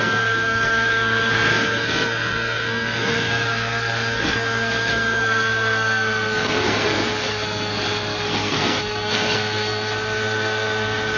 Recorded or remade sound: remade